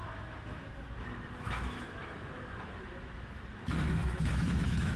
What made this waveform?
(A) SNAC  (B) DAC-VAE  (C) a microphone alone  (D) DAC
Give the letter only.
B